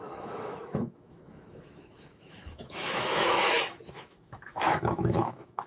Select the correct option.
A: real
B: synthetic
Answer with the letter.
B